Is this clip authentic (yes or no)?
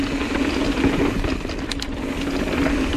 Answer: yes